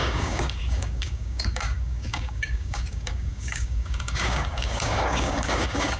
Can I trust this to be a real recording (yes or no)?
no